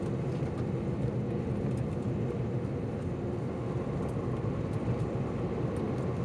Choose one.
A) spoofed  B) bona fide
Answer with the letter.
B